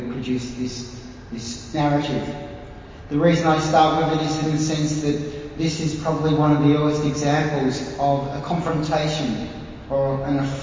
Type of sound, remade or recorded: recorded